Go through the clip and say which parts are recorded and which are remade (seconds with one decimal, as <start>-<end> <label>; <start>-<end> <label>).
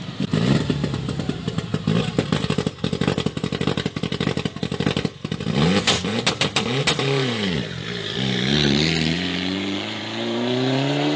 0.0-1.7 remade; 1.7-6.8 recorded; 6.8-11.2 remade